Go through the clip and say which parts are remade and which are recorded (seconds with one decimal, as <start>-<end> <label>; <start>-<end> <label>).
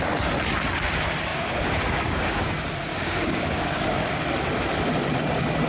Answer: 0.0-1.3 recorded; 1.3-2.5 remade; 2.5-2.9 recorded; 2.9-4.2 remade; 4.2-5.7 recorded